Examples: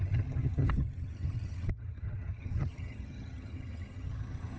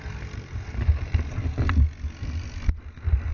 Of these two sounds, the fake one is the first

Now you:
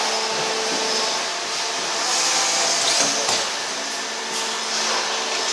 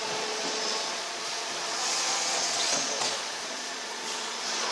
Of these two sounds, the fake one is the second